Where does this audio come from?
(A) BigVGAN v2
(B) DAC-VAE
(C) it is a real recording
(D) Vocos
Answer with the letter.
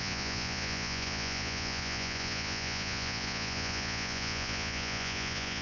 D